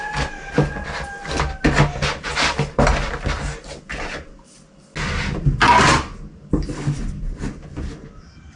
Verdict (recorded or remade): recorded